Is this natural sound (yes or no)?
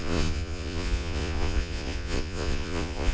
no